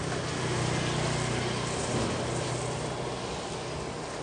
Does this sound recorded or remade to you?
recorded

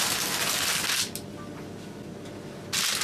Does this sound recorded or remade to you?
recorded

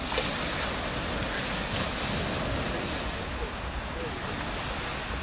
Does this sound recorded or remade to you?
recorded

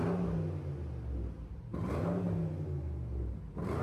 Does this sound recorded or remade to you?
recorded